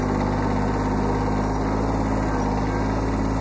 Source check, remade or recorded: recorded